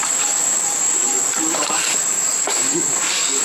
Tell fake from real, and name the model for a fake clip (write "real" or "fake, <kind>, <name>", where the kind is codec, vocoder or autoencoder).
fake, codec, DAC